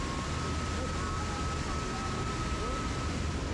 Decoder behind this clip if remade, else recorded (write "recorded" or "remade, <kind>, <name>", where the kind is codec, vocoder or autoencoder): recorded